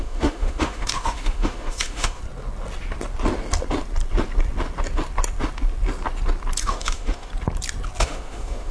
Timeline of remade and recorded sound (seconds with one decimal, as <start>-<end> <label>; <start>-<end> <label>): 0.0-2.2 remade; 2.2-6.6 recorded; 6.6-7.3 remade; 7.3-8.0 recorded; 8.0-8.7 remade